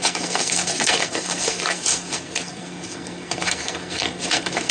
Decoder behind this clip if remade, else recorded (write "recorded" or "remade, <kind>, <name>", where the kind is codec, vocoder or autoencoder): remade, codec, SNAC